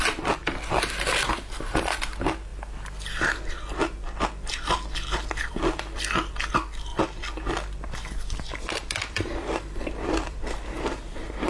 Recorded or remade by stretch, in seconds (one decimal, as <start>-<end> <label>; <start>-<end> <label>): 0.0-6.9 recorded; 6.9-11.5 remade